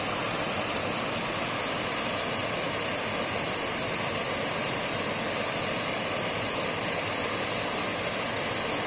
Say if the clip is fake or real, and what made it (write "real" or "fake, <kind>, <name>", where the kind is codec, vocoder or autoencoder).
real